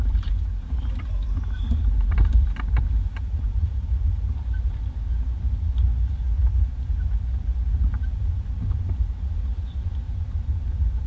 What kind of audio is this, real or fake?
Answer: fake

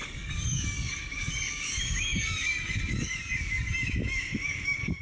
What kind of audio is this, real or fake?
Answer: fake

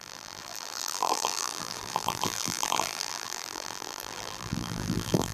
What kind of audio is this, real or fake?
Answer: fake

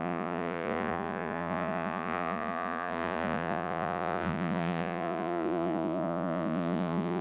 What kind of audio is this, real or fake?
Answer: fake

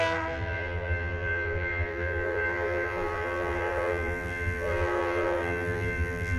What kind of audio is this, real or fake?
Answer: fake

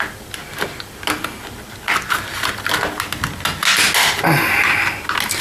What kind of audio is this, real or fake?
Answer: real